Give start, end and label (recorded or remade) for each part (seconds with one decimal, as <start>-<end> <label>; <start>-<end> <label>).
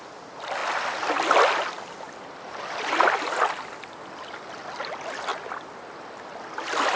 0.0-7.0 recorded